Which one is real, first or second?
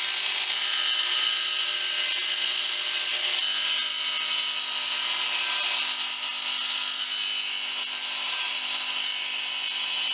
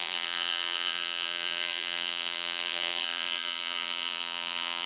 first